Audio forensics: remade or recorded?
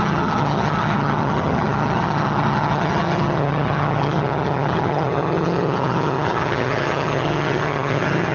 remade